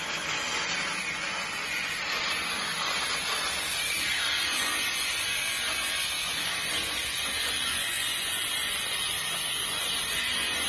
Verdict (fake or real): fake